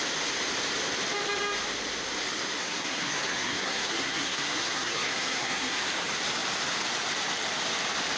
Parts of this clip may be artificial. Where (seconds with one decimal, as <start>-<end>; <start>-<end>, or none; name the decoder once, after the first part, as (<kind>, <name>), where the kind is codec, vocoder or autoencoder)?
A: 2.6-5.8 (codec, SNAC)